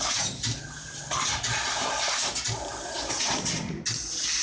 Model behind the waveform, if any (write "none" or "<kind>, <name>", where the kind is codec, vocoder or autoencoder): none